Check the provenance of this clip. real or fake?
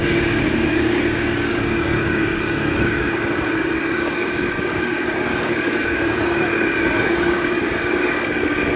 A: fake